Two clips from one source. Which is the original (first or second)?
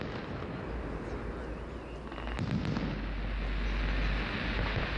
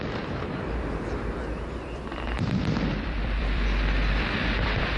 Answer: first